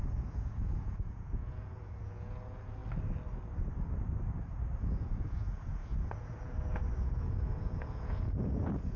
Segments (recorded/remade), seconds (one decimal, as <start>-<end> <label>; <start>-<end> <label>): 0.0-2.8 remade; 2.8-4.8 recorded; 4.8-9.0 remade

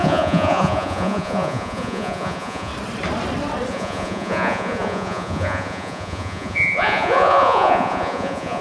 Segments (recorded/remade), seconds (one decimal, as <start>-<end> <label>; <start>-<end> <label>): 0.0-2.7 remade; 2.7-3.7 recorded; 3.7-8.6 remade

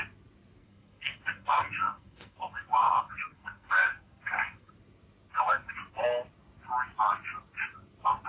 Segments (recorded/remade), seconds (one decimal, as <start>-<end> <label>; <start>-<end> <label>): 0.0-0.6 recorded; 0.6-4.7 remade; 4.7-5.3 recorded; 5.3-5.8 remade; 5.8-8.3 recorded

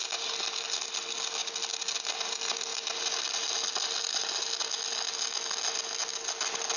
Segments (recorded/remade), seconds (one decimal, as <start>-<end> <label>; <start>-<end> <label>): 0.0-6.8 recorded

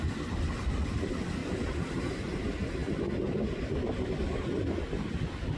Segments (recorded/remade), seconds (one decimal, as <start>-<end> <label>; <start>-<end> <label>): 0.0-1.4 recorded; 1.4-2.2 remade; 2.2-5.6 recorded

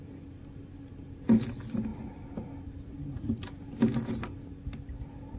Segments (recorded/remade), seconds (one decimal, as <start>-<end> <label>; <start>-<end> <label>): 0.0-5.4 recorded